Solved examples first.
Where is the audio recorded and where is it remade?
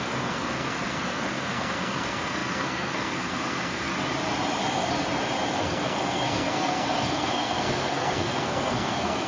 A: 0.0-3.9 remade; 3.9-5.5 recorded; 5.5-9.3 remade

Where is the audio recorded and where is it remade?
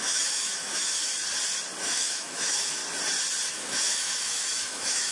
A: 0.0-1.1 remade; 1.1-1.8 recorded; 1.8-2.8 remade; 2.8-3.5 recorded; 3.5-5.1 remade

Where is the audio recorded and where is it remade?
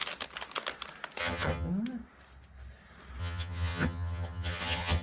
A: 0.0-1.2 recorded; 1.2-1.7 remade; 1.7-3.2 recorded; 3.2-5.0 remade